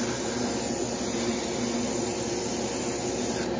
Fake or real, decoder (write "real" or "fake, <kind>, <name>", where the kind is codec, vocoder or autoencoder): real